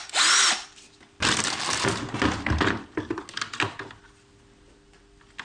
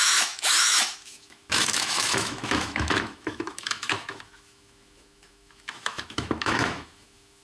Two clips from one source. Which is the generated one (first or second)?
second